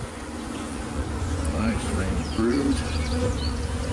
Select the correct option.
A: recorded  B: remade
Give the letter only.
B